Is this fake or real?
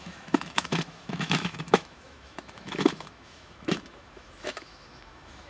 fake